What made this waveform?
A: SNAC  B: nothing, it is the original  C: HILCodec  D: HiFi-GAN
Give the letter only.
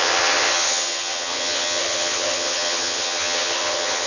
D